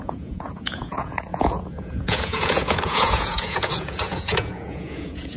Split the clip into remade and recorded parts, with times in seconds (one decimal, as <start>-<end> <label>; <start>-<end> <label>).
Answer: 0.0-5.4 remade